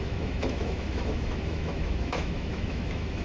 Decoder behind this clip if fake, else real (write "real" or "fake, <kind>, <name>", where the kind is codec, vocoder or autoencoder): fake, autoencoder, DAC-VAE